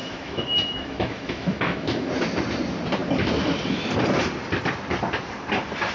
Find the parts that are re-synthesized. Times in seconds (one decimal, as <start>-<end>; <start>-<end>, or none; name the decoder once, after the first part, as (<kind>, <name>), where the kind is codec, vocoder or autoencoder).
0.0-2.1 (autoencoder, DAC-VAE)